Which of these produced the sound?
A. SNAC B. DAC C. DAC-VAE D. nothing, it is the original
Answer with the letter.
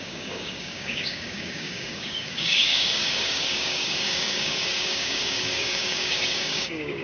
B